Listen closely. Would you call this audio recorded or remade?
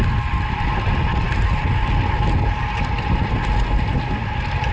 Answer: recorded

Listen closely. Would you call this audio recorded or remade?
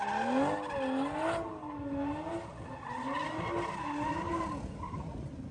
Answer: recorded